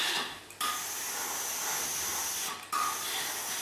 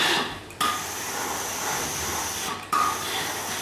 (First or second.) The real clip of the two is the first